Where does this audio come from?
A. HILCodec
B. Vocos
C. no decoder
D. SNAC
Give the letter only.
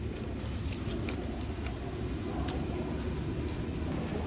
C